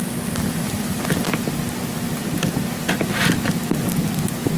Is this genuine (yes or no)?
yes